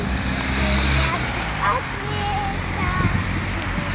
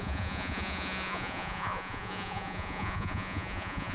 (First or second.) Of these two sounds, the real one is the first